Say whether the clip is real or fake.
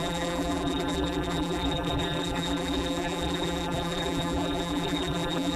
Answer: fake